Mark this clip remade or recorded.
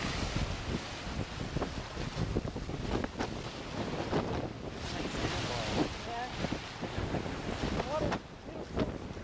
recorded